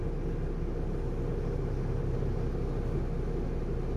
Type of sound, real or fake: real